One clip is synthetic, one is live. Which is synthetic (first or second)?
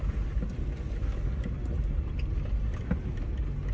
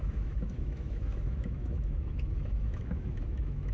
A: second